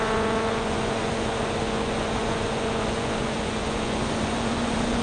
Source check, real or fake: fake